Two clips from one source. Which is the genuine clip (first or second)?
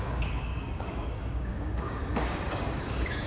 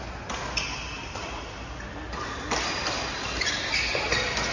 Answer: second